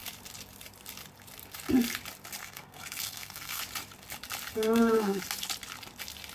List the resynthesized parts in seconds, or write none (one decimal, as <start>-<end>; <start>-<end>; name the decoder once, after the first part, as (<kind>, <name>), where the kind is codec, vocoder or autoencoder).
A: 2.4-3.6 (codec, SNAC); 4.5-5.2